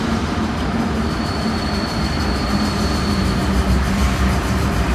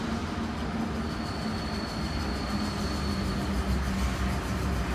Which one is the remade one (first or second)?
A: first